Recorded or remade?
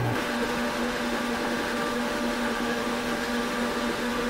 remade